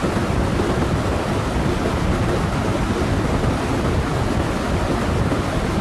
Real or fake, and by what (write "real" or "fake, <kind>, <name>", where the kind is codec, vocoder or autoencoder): fake, vocoder, BigVGAN v2